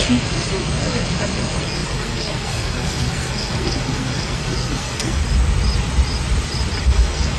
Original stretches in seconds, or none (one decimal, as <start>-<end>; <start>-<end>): 5.2-6.8